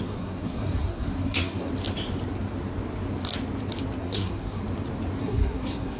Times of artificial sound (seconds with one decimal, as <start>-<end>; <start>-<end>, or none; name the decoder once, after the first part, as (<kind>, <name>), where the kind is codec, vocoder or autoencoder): 0.0-1.7 (codec, SNAC); 4.0-4.6; 5.2-6.0

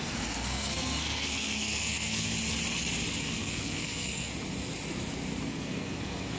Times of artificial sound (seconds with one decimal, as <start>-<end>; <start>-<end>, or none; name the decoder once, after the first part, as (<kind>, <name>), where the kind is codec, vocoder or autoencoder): 0.0-2.3 (codec, SNAC); 3.2-4.3; 5.5-6.4

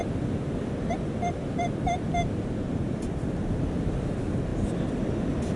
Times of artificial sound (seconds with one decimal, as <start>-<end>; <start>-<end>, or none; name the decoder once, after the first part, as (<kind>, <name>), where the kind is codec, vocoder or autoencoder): none

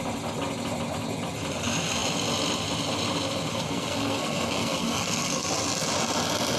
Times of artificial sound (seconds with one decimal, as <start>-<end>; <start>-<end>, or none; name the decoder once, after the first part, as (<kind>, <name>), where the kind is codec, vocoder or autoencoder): 3.5-5.5 (codec, SNAC)

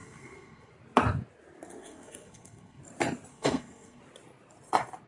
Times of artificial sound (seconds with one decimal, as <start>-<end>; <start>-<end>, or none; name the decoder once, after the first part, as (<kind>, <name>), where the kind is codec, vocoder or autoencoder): 0.0-0.7 (codec, SNAC); 1.8-2.8; 3.3-4.0

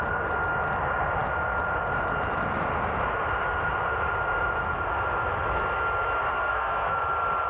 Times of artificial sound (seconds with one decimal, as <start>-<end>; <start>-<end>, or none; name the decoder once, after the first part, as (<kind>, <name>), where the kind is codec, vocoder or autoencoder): 6.2-7.0 (codec, SNAC)